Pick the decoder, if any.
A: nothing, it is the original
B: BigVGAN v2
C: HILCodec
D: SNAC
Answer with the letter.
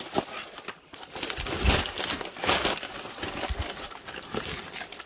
A